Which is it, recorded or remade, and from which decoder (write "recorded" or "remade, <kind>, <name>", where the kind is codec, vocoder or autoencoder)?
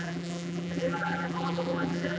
remade, vocoder, BigVGAN v2